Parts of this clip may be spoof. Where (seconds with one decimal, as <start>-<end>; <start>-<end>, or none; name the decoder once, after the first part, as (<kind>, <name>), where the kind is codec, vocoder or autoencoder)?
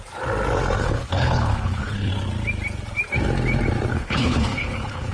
0.8-2.1 (codec, HILCodec); 3.9-5.1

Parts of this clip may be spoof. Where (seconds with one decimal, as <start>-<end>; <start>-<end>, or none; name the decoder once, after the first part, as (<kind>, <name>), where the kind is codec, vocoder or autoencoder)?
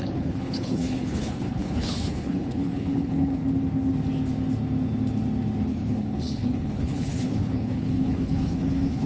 0.0-3.4 (codec, HILCodec); 5.7-9.1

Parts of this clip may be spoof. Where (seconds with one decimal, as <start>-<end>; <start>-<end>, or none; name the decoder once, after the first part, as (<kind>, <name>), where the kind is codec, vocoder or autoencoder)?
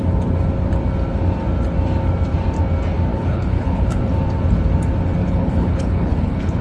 3.1-4.0 (codec, HILCodec); 5.2-6.6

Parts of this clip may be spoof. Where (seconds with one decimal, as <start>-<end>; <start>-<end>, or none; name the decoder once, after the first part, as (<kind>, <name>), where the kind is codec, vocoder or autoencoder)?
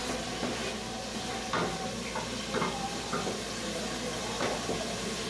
none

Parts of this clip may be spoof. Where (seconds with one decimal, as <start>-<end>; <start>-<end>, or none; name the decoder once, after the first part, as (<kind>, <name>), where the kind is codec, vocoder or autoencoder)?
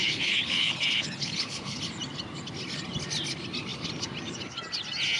0.0-1.8 (codec, HILCodec)